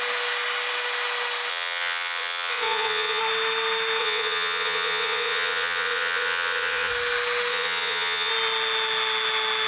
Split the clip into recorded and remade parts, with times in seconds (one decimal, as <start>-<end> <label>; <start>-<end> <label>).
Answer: 0.0-1.5 recorded; 1.5-3.2 remade; 3.2-4.0 recorded; 4.0-6.9 remade; 6.9-7.5 recorded; 7.5-8.3 remade; 8.3-9.7 recorded